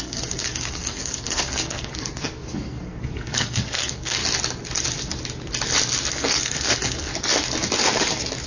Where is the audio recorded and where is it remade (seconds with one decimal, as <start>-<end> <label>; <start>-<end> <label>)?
0.0-4.2 remade; 4.2-6.1 recorded; 6.1-7.1 remade; 7.1-8.5 recorded